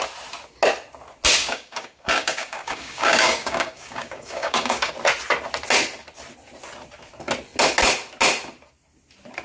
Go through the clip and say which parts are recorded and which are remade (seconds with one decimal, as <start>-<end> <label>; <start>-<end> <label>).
0.0-1.4 recorded; 1.4-4.9 remade; 4.9-9.4 recorded